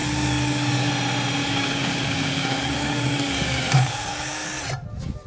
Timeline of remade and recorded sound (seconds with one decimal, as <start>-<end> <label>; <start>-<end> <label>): 0.0-0.9 remade; 0.9-1.4 recorded; 1.4-4.6 remade; 4.6-5.3 recorded